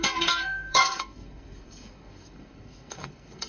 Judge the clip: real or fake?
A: fake